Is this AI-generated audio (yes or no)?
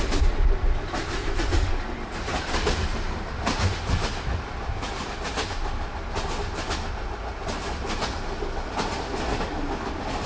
no